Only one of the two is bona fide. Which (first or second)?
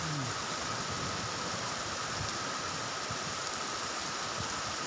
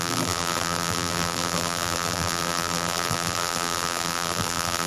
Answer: first